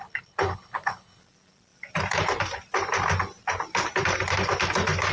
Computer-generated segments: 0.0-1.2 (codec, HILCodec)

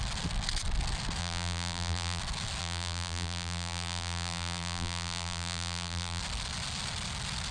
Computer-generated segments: 1.2-2.2 (vocoder, BigVGAN v2); 2.6-6.2